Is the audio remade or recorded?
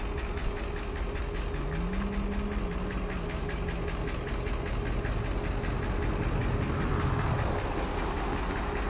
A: recorded